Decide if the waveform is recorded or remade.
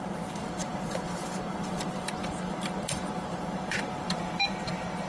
remade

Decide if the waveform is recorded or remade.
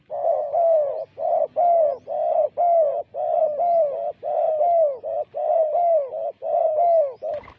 recorded